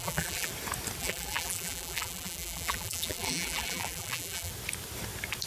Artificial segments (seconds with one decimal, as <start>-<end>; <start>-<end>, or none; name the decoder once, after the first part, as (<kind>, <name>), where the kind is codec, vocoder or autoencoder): 0.0-0.5 (vocoder, BigVGAN v2); 1.0-4.5